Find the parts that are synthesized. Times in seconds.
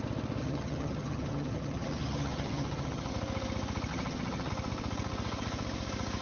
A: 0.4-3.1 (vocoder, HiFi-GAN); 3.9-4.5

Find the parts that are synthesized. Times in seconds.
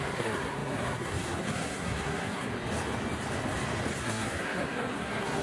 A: 0.0-2.5 (codec, SNAC); 4.0-5.4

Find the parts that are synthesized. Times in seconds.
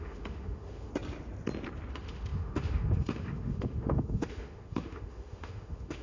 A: 0.0-0.9 (autoencoder, DAC-VAE); 1.9-6.0